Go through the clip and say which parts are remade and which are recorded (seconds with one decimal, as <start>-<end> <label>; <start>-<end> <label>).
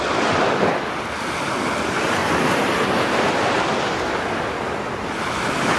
0.0-5.8 recorded